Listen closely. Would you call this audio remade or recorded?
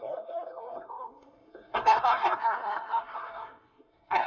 remade